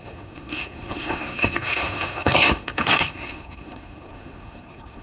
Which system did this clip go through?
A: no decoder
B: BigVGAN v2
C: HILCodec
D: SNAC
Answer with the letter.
D